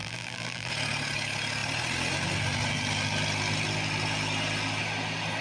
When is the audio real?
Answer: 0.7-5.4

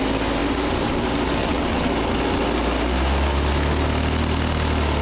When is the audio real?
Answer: 0.0-1.4; 1.9-5.0

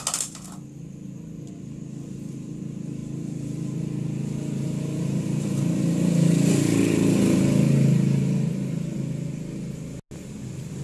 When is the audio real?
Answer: 0.0-10.8

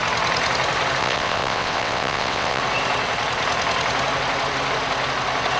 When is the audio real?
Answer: 0.0-1.0; 2.6-5.6